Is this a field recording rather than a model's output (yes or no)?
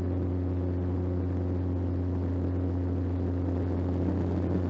yes